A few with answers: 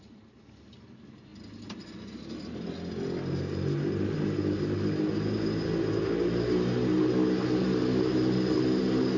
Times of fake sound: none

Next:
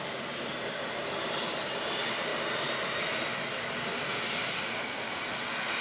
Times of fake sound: 2.3-3.4 (vocoder, BigVGAN v2)

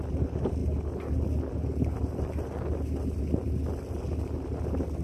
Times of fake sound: none

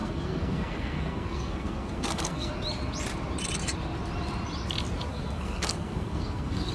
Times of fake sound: 0.0-2.5 (codec, SNAC); 5.1-6.7

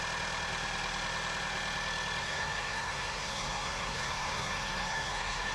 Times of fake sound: 2.2-5.5 (codec, SNAC)

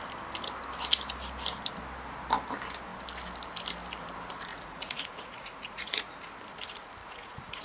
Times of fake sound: 4.5-6.3 (vocoder, Vocos); 7.0-7.6